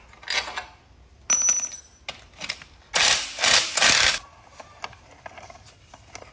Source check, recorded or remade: recorded